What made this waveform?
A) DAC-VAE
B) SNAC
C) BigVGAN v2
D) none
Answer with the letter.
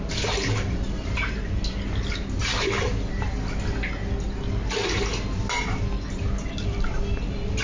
D